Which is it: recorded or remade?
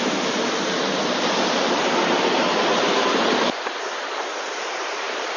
remade